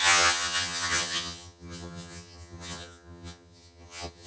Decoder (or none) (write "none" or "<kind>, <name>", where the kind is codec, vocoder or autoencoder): vocoder, HiFi-GAN